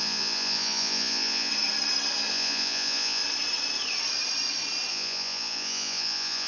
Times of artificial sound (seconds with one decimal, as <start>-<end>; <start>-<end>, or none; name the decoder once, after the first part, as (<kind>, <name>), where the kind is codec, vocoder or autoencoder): 0.0-1.5 (vocoder, Vocos); 2.3-3.2; 4.9-6.5